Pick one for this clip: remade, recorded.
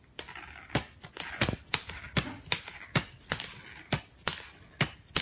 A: recorded